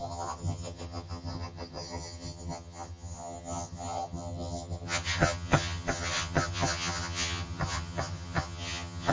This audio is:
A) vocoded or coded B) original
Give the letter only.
A